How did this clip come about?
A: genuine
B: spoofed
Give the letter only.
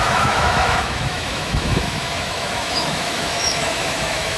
B